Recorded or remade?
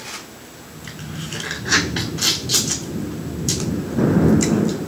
recorded